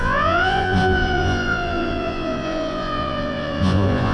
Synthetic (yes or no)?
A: yes